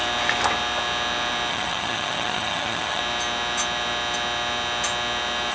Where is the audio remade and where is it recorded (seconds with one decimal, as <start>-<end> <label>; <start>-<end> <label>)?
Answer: 0.0-1.5 recorded; 1.5-3.0 remade; 3.0-5.5 recorded